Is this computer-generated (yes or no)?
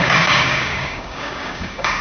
yes